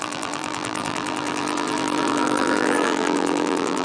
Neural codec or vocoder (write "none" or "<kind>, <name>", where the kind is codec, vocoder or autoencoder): vocoder, BigVGAN v2